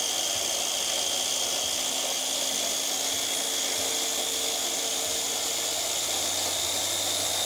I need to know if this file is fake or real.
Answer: real